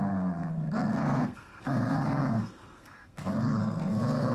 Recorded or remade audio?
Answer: remade